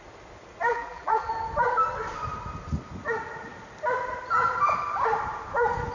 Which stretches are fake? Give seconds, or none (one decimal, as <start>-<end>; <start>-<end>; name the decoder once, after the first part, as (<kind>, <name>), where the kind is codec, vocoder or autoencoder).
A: 0.7-1.3 (vocoder, BigVGAN v2)